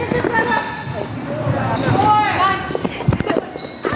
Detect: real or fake real